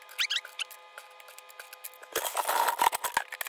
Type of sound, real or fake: real